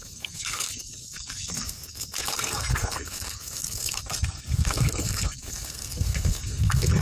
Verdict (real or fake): fake